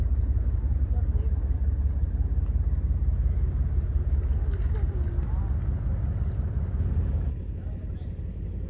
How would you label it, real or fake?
real